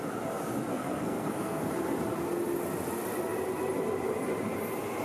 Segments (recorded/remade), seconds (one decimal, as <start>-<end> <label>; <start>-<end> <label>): 0.0-0.7 recorded; 0.7-1.7 remade; 1.7-5.0 recorded